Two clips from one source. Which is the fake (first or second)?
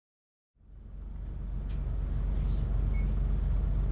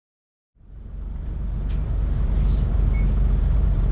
second